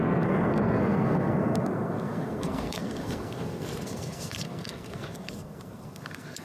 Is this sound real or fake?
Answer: fake